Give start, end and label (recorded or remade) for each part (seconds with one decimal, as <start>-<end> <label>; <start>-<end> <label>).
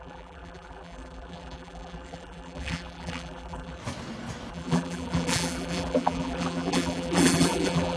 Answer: 0.0-3.8 remade; 3.8-4.5 recorded; 4.5-8.0 remade